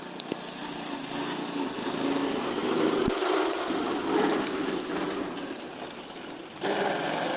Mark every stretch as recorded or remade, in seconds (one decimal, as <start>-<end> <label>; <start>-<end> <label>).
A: 0.0-7.4 recorded